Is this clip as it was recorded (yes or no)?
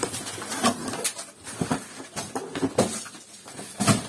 yes